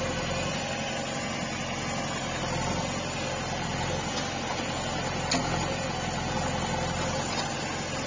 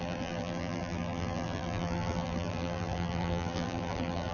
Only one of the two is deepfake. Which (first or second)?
second